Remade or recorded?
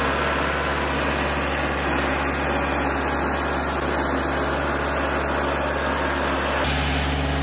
recorded